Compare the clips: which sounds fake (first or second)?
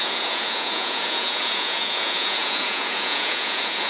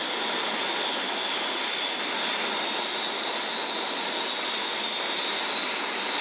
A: first